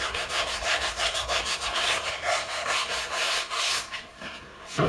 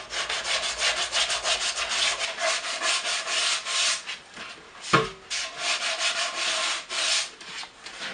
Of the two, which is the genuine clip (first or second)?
second